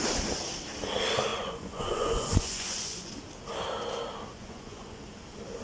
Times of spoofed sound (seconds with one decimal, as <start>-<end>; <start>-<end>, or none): 1.3-3.1; 4.3-5.0